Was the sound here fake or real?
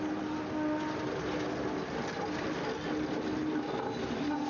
real